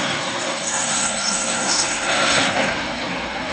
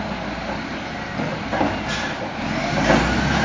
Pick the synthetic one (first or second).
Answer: first